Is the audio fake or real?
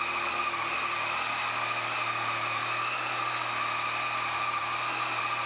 real